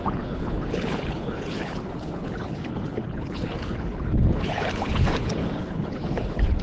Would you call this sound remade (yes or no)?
yes